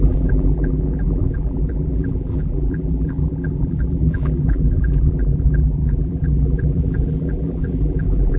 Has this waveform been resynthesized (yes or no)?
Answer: yes